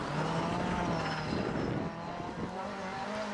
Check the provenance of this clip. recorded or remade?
recorded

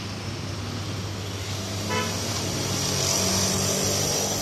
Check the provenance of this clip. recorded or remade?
recorded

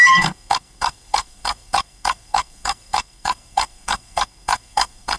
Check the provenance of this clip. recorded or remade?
remade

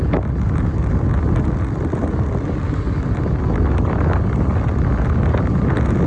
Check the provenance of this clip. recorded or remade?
recorded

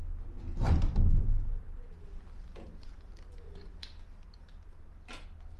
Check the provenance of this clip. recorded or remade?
recorded